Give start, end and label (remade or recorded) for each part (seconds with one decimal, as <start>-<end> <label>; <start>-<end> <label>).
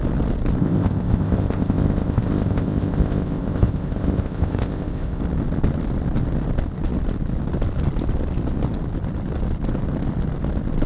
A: 0.0-0.6 recorded; 0.6-5.2 remade; 5.2-10.9 recorded